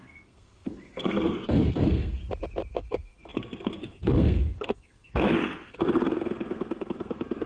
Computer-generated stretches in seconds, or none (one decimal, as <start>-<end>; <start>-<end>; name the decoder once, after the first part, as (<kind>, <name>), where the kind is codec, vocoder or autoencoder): 0.0-2.2 (codec, SNAC); 2.7-7.5